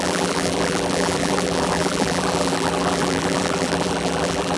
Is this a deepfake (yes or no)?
yes